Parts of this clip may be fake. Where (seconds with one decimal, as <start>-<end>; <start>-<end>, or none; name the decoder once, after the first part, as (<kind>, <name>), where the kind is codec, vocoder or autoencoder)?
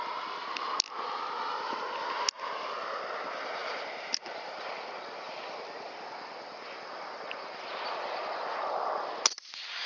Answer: 3.6-4.7 (vocoder, BigVGAN v2)